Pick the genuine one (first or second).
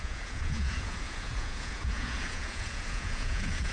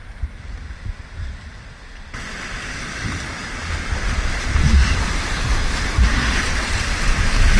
second